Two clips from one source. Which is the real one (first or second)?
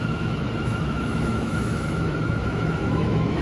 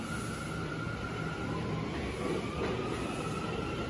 second